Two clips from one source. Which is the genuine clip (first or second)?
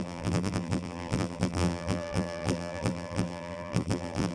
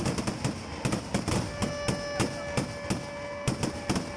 second